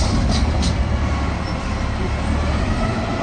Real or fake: fake